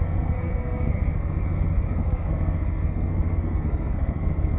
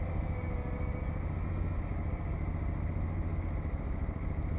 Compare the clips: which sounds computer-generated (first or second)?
first